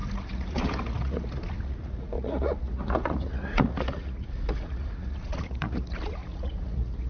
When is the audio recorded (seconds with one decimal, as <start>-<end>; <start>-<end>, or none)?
none